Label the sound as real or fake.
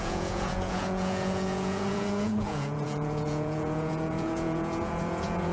fake